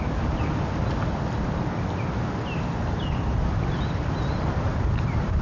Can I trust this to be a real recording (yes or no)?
yes